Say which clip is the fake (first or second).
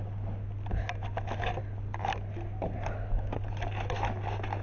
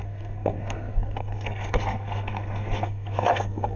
second